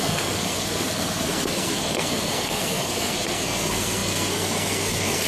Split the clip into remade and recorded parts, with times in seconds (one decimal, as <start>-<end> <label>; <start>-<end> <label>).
0.0-5.3 remade